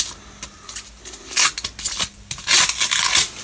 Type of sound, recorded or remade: recorded